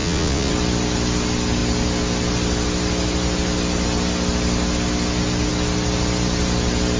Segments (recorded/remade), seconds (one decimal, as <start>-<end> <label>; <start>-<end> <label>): 0.0-0.5 remade; 0.5-7.0 recorded